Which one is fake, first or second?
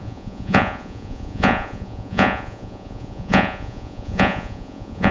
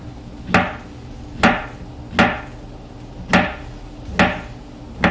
first